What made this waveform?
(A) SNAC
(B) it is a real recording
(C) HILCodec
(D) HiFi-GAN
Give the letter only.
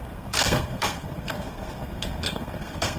A